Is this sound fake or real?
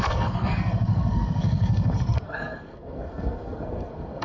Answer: fake